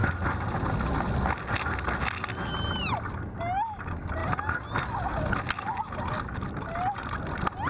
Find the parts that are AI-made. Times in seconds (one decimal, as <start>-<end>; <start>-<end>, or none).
none